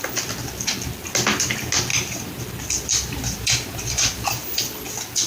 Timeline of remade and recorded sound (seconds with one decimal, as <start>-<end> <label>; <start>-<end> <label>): 0.0-1.9 recorded; 1.9-2.4 remade; 2.4-3.2 recorded; 3.2-4.6 remade; 4.6-5.3 recorded